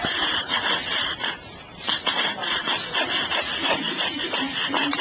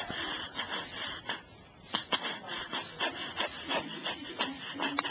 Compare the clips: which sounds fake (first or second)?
first